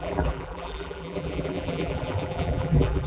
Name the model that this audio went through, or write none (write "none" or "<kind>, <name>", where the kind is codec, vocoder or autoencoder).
vocoder, BigVGAN v2